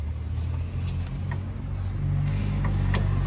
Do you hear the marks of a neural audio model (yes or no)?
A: no